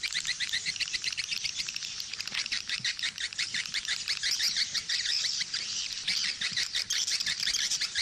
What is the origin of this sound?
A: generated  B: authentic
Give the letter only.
A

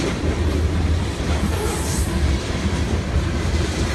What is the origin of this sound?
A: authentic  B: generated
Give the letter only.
B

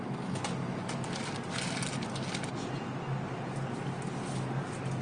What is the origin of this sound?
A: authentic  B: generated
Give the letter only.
A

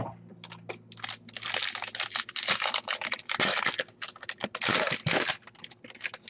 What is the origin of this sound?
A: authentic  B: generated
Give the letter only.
A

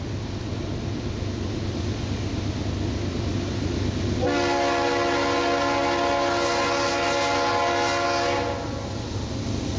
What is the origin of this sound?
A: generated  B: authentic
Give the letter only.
B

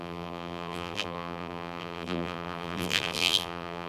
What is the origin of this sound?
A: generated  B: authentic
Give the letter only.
A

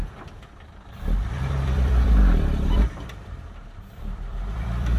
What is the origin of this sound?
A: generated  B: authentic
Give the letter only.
A